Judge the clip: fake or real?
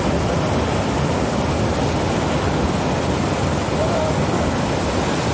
real